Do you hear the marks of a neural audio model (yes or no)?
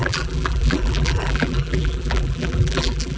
yes